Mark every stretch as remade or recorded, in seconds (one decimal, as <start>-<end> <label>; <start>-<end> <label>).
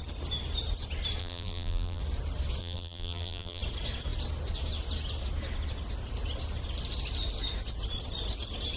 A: 0.0-1.2 recorded; 1.2-2.0 remade; 2.0-2.6 recorded; 2.6-3.6 remade; 3.6-8.8 recorded